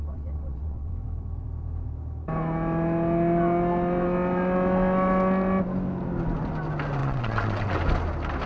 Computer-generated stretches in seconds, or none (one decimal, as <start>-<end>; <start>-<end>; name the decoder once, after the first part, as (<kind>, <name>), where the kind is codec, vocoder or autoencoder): 0.0-0.9 (vocoder, WaveNeXt); 7.0-7.8